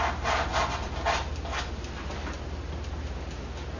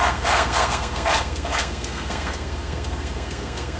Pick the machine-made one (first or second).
second